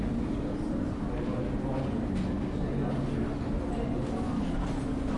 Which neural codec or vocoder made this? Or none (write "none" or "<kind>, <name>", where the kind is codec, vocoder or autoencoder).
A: none